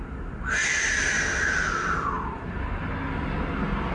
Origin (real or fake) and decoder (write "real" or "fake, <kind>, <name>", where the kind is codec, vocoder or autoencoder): real